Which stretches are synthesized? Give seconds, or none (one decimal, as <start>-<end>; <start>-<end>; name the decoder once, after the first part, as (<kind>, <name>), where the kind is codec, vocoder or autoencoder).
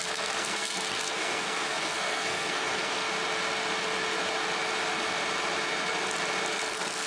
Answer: 0.0-3.1 (codec, SNAC); 6.5-7.1